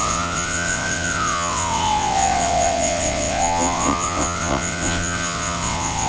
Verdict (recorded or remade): remade